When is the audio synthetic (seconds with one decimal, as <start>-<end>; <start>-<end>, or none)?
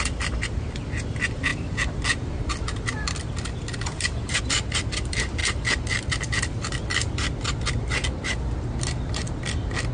none